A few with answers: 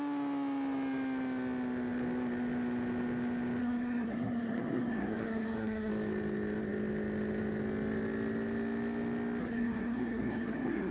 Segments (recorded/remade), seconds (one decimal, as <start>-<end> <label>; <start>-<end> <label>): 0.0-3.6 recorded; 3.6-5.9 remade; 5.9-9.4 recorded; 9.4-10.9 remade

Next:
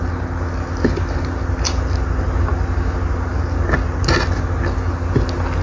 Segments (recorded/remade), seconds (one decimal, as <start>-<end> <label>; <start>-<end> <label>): 0.0-5.6 recorded

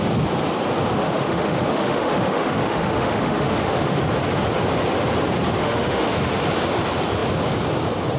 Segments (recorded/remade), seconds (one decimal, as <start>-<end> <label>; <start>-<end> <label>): 0.0-0.9 recorded; 0.9-4.0 remade; 4.0-5.6 recorded; 5.6-6.3 remade; 6.3-8.2 recorded